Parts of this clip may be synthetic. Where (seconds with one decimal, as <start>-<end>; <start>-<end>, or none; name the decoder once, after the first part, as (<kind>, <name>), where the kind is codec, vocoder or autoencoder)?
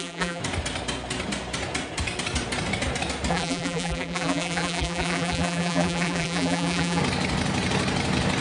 0.0-0.4 (vocoder, BigVGAN v2); 3.3-7.0